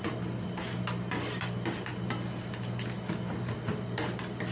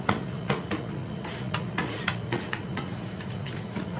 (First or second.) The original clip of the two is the first